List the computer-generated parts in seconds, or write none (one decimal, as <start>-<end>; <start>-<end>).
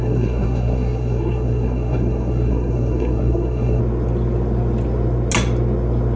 0.0-3.8